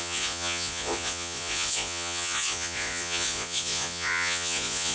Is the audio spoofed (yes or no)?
yes